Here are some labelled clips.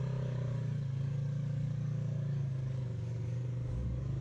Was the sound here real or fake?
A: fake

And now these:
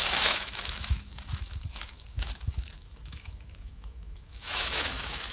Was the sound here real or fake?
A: fake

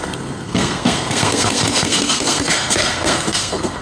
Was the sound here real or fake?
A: fake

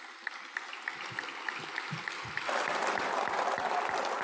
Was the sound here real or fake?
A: real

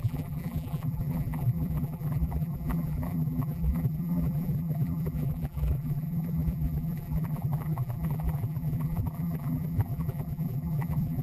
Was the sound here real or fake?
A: fake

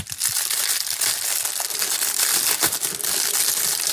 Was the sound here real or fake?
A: real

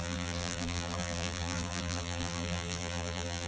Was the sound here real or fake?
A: fake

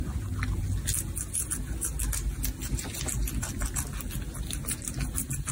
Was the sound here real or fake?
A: real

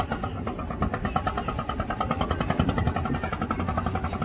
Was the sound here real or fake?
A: real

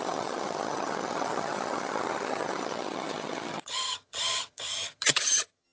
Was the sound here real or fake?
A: fake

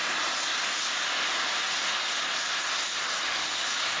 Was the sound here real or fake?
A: real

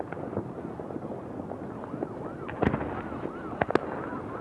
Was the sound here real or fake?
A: real